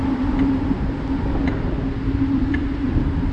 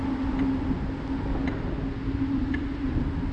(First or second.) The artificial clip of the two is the first